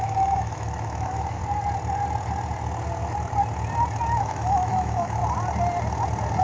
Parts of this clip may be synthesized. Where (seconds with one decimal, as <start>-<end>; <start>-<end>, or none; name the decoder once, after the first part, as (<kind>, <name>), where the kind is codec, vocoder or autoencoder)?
0.0-1.4 (autoencoder, DAC-VAE); 4.2-5.2